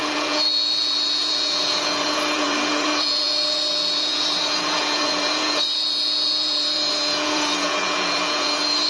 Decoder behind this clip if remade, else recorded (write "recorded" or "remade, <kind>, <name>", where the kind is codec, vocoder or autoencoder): remade, vocoder, Vocos